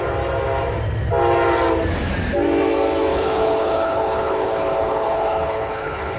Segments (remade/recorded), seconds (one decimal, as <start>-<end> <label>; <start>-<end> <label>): 0.0-3.1 recorded; 3.1-6.2 remade